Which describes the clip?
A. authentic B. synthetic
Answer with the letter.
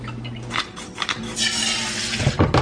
A